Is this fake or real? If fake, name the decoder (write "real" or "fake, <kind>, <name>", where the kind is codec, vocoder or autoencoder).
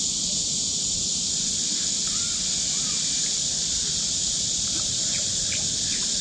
real